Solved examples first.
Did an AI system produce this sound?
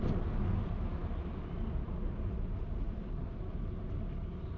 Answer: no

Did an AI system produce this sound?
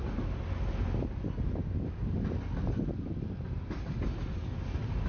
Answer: no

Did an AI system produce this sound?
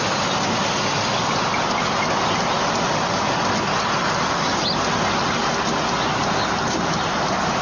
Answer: no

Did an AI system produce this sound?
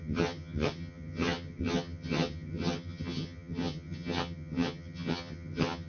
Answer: yes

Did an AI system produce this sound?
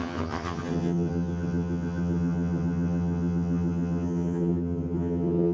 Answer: yes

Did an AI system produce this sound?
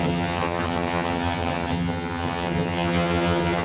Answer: yes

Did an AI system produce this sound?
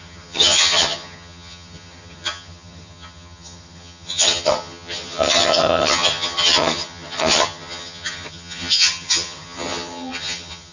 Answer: yes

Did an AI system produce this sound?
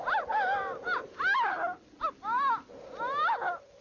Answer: no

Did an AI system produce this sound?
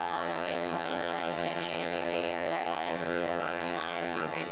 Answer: yes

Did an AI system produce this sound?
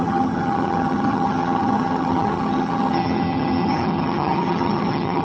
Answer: yes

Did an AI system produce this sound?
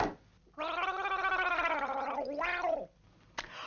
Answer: no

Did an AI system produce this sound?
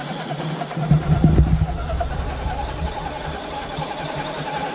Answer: no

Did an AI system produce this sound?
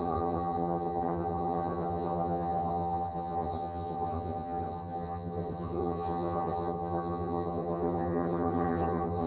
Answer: yes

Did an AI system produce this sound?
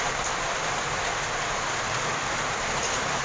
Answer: no